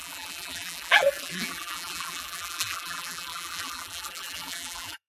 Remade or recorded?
remade